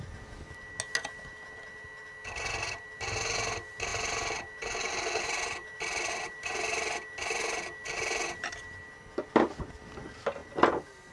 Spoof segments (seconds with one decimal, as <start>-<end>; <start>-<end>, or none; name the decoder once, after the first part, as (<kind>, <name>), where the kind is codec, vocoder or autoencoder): none